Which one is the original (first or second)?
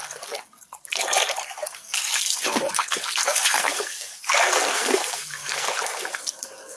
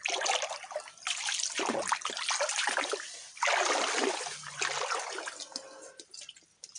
second